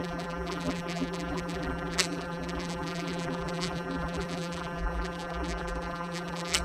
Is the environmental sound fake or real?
fake